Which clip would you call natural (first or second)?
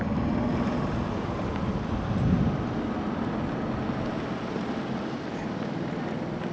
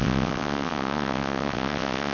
first